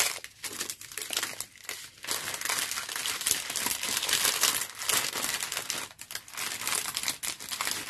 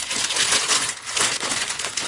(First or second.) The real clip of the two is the first